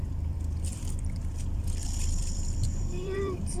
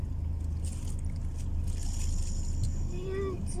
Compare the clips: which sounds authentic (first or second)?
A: second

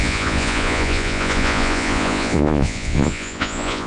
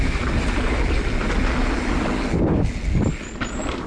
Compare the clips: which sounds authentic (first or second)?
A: second